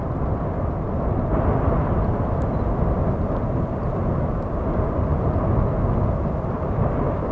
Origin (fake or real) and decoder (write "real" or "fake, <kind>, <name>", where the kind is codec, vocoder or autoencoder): real